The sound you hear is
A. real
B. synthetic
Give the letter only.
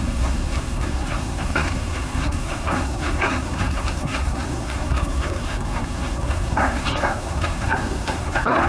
B